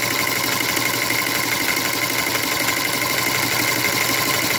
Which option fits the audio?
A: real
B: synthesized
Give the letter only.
A